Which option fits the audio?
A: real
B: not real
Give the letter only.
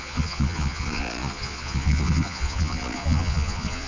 B